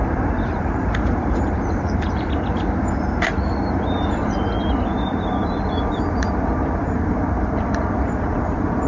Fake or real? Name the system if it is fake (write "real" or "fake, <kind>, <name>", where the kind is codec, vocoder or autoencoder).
fake, vocoder, BigVGAN v2